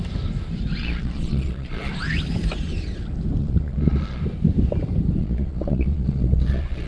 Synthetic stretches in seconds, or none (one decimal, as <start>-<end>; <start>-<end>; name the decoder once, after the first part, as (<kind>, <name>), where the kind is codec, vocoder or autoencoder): 0.8-1.9 (vocoder, Vocos); 3.4-4.2; 5.2-6.9